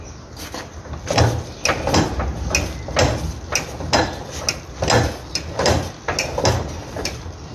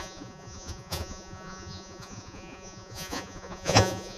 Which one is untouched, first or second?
first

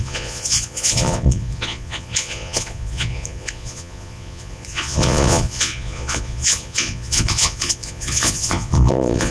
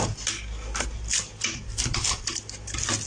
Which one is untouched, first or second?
second